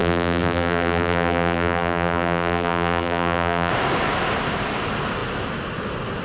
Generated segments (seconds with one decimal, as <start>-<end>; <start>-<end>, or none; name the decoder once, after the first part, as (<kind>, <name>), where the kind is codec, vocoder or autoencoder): 0.0-3.7 (vocoder, BigVGAN v2)